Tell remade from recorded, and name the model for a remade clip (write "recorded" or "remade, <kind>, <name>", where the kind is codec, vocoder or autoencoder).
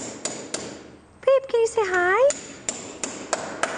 recorded